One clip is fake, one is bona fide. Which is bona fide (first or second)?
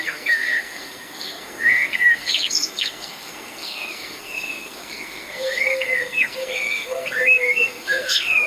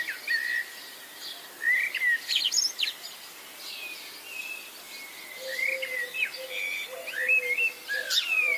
second